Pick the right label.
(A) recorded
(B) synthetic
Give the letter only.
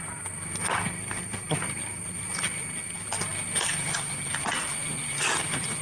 A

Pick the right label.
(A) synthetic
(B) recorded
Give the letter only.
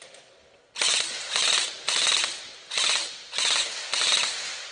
B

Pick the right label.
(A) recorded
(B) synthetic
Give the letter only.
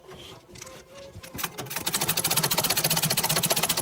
A